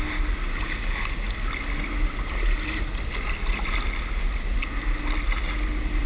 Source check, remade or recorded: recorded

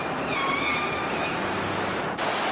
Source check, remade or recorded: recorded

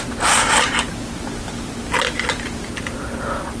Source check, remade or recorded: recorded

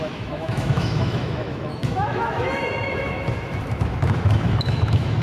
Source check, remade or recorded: remade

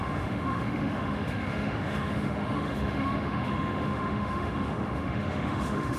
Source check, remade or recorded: remade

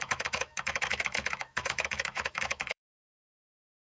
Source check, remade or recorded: remade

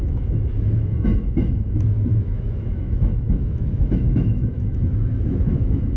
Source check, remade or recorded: remade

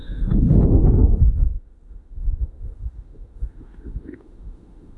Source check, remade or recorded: remade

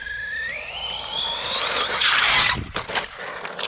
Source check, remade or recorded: recorded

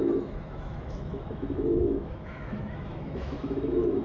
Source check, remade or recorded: remade